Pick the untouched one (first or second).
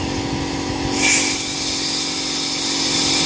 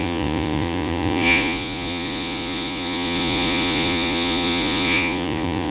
first